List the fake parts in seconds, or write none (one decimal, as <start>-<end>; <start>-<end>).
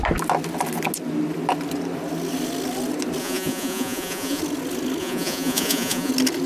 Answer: 3.2-4.4; 5.0-6.1